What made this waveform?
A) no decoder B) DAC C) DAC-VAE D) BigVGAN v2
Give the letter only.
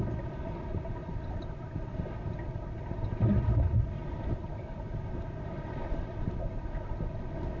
A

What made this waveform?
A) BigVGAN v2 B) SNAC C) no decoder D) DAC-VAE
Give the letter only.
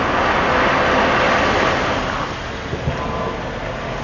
C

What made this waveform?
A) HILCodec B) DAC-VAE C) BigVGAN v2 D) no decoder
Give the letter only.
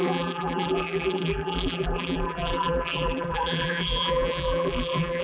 C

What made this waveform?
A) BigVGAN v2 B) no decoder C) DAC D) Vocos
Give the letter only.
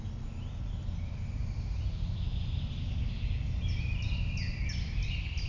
A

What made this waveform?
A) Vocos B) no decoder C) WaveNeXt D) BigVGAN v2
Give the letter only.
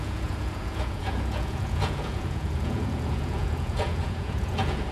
A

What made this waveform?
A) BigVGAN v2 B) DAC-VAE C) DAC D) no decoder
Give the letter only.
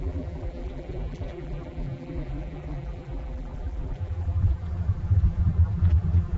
A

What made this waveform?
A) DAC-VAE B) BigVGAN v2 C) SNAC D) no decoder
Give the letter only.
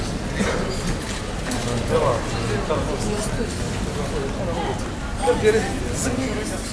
D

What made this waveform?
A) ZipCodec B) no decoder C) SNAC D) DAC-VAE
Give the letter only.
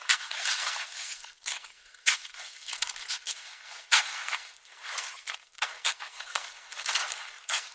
C